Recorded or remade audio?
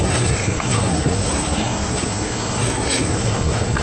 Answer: remade